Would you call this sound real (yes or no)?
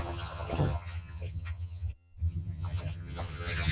no